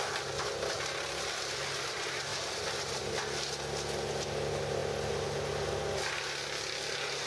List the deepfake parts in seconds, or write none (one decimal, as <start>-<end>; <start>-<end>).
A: 2.3-3.0